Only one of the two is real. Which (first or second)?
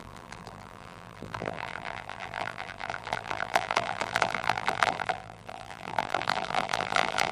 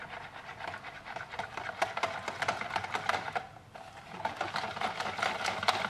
second